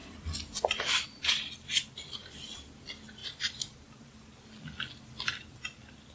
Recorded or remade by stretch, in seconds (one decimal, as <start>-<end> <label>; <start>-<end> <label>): 0.0-6.1 recorded